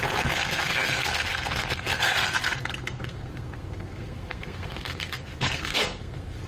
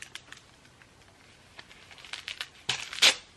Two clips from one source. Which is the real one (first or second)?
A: second